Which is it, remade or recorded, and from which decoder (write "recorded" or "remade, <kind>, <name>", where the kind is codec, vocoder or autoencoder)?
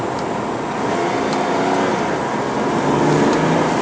recorded